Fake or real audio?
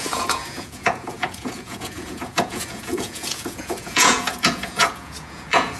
fake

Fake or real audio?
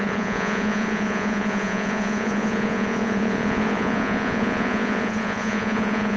fake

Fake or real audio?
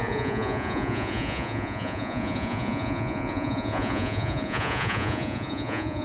fake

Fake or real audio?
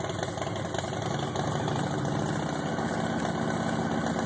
real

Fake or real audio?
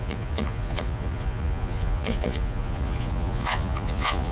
fake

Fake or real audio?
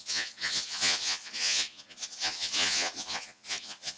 fake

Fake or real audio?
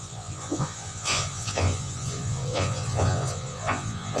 fake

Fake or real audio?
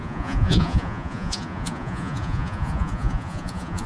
fake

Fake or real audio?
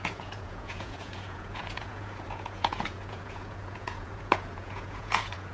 fake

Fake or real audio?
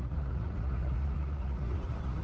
fake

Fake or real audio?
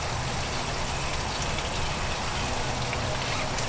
real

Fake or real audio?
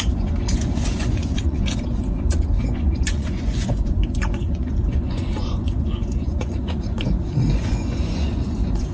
fake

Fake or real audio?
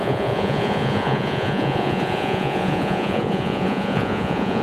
fake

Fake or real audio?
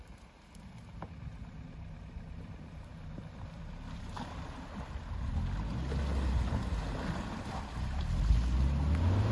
real